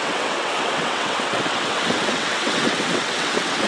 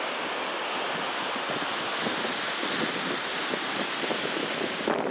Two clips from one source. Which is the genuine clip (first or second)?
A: second